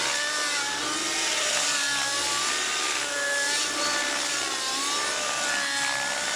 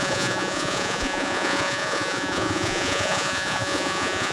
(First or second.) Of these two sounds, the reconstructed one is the second